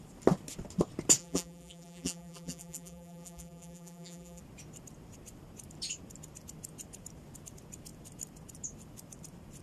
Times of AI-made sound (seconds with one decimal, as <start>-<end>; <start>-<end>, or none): 1.2-4.4